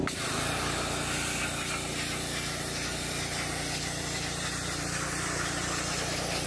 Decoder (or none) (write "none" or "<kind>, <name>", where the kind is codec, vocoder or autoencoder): none